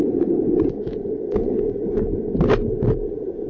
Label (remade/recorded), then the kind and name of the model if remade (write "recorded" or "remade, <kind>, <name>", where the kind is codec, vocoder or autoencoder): recorded